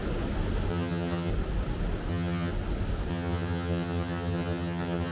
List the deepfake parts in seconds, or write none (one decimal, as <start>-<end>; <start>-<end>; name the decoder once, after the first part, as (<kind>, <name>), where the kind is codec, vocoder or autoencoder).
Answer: 0.7-1.3 (vocoder, HiFi-GAN); 2.1-2.5; 3.1-5.1